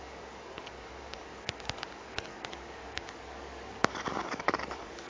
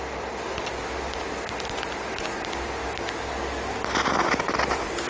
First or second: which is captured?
second